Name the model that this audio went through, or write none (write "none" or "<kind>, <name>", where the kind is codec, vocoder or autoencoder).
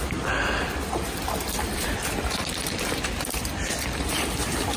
vocoder, BigVGAN v2